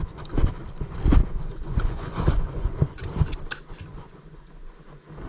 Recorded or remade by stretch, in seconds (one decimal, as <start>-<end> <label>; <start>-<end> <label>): 0.0-1.2 recorded; 1.2-3.0 remade; 3.0-3.9 recorded; 3.9-4.7 remade; 4.7-5.3 recorded

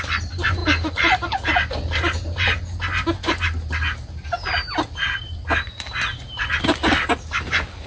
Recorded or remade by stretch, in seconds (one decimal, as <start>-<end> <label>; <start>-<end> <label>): 0.0-7.9 recorded

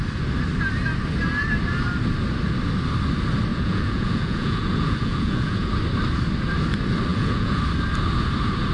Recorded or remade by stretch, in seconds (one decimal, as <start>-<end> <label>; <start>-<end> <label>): 0.0-3.5 recorded; 3.5-5.7 remade; 5.7-7.1 recorded; 7.1-7.6 remade; 7.6-8.7 recorded

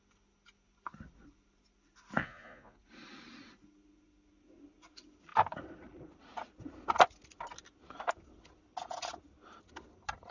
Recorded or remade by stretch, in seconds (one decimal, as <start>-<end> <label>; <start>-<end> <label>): 0.0-2.2 recorded; 2.2-2.8 remade; 2.8-10.3 recorded